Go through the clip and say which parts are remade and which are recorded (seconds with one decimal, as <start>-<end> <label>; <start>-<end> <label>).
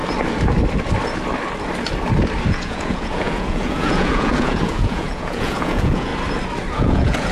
0.0-2.5 recorded; 2.5-6.1 remade; 6.1-6.7 recorded; 6.7-7.3 remade